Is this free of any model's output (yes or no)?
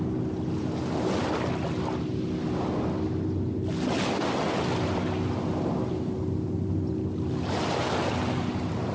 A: yes